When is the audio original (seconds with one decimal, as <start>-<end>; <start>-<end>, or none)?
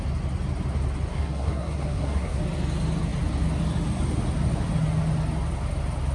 0.0-1.1; 2.4-6.1